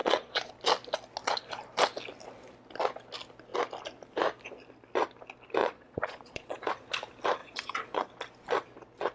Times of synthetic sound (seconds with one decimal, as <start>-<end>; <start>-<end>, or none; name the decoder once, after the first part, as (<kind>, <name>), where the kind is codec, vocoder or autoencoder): 0.0-0.5 (vocoder, Vocos); 5.6-6.7; 7.4-8.1